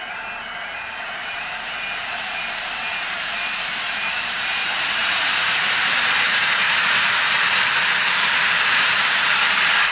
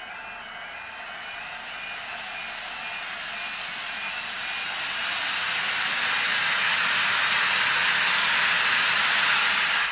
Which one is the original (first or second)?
second